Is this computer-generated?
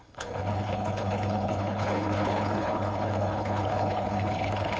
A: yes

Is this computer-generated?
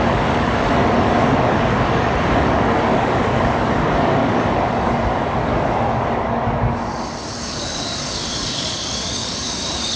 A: yes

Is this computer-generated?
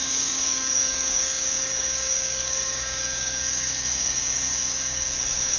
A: yes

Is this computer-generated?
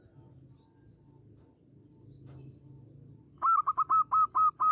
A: no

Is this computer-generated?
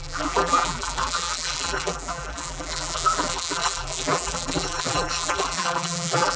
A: yes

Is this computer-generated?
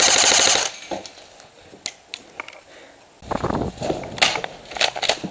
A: no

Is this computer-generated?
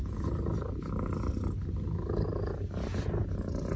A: no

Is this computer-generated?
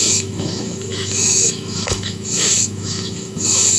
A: yes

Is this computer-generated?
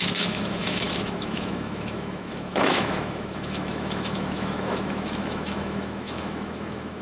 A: yes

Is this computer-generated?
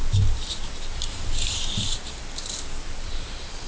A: no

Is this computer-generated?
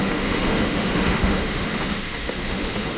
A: yes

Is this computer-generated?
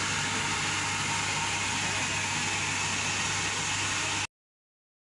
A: no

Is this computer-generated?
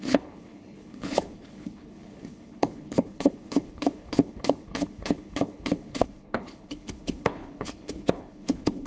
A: yes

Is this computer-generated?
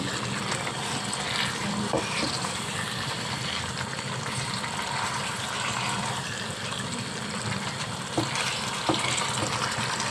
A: no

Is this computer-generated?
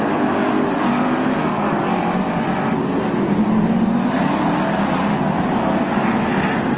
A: no